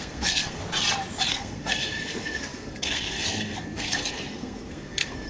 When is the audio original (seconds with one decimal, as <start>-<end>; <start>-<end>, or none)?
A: 0.6-1.3